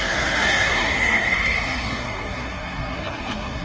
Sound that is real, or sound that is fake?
fake